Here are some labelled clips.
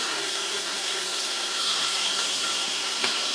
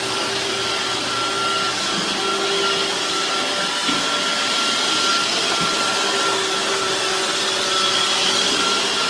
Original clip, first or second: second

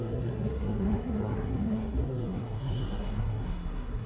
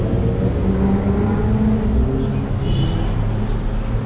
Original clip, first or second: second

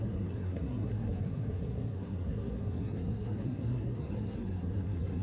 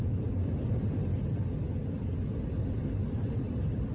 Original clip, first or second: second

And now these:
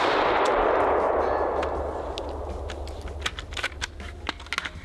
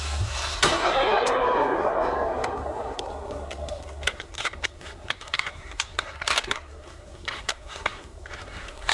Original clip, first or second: first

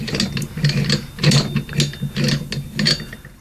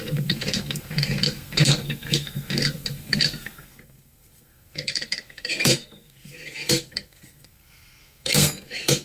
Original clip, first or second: first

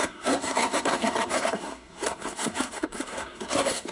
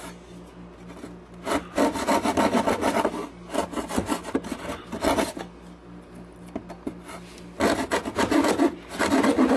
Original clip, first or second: second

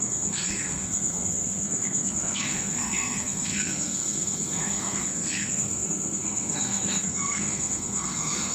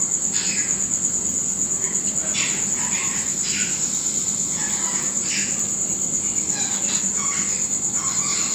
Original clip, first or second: second